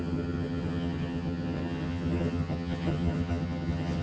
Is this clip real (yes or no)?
no